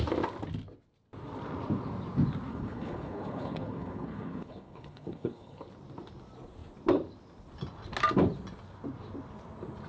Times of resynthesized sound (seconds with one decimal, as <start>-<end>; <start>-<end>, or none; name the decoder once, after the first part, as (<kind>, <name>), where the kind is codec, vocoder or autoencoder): 2.5-5.7 (codec, HILCodec)